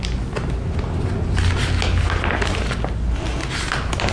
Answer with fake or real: real